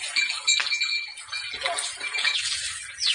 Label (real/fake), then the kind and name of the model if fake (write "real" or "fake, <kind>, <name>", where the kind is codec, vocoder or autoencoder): real